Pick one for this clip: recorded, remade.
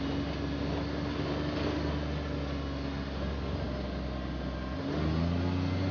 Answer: recorded